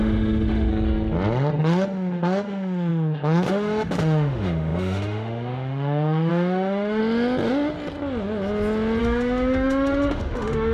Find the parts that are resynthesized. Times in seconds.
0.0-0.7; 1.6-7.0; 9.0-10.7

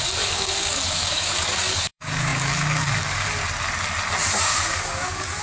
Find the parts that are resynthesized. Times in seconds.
0.0-3.4; 4.4-5.4

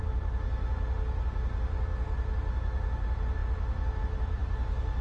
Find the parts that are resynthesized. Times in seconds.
none

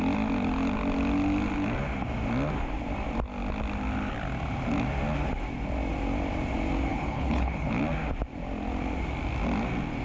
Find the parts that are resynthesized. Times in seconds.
6.9-7.8

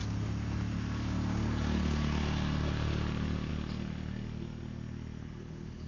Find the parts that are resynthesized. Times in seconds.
5.2-5.9